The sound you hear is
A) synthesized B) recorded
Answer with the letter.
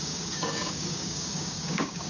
A